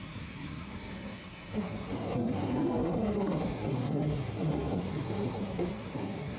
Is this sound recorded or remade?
remade